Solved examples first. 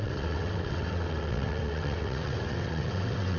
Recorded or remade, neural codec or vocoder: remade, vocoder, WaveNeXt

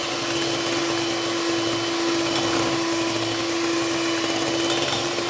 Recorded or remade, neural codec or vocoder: recorded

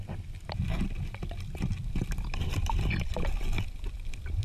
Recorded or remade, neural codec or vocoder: recorded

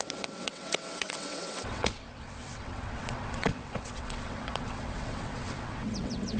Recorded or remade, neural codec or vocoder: remade, vocoder, WaveNeXt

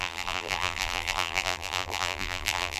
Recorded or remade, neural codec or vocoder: remade, vocoder, BigVGAN v2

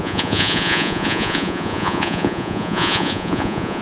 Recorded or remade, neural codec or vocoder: remade, vocoder, Vocos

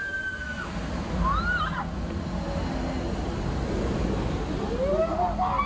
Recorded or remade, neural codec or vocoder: recorded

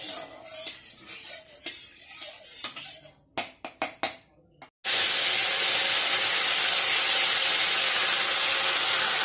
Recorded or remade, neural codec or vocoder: recorded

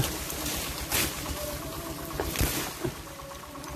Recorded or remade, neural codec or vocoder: recorded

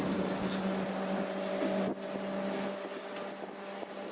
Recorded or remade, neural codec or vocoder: recorded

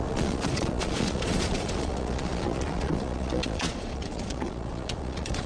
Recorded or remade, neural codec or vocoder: remade, vocoder, Vocos